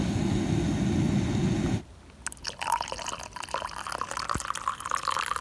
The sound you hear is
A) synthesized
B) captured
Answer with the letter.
B